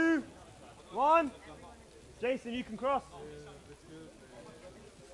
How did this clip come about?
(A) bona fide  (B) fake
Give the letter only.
A